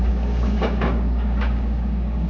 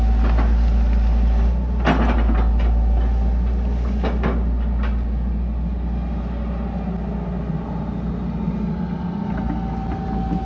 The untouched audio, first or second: second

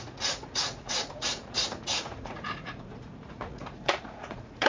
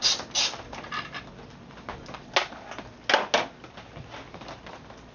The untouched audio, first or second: second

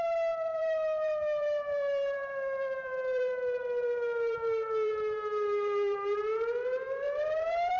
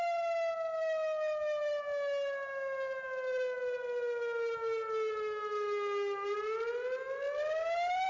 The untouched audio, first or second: second